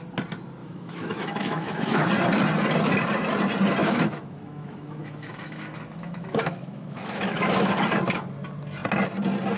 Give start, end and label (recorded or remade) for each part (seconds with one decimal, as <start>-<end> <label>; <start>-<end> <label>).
0.0-0.6 recorded; 0.6-2.1 remade; 2.1-3.8 recorded; 3.8-7.7 remade; 7.7-9.6 recorded